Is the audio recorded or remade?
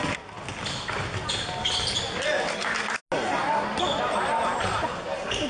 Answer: recorded